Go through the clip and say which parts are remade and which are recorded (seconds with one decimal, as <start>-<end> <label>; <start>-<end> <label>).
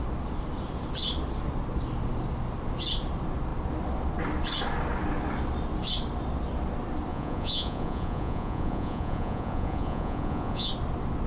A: 0.0-7.1 recorded; 7.1-10.7 remade; 10.7-11.3 recorded